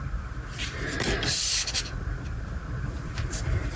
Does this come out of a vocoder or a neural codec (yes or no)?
yes